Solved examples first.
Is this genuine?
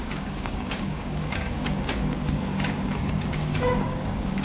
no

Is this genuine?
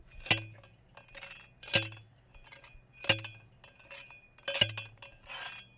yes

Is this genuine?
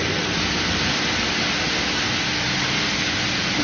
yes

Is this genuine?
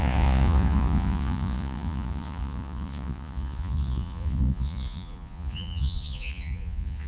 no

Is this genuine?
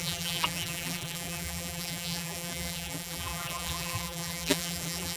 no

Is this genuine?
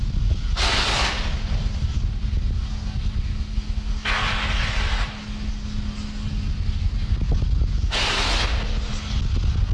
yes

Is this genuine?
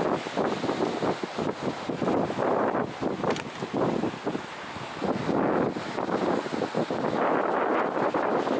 yes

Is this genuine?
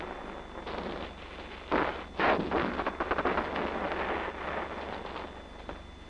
yes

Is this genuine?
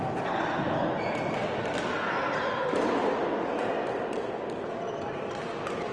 yes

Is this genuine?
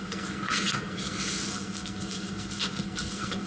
no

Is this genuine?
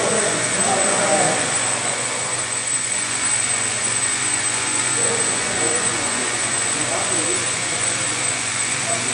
no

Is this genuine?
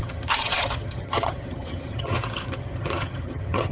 no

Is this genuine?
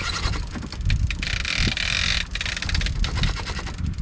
yes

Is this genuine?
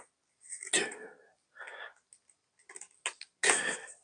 yes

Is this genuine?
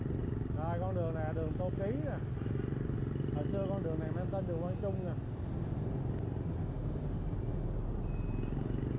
yes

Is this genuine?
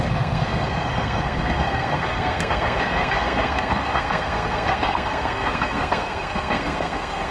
no